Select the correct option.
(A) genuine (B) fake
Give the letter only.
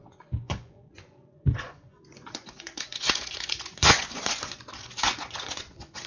B